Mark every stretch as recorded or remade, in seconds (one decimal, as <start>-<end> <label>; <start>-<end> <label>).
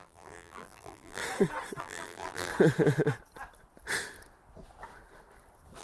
0.0-1.2 remade; 1.2-1.8 recorded; 1.8-2.5 remade; 2.5-5.8 recorded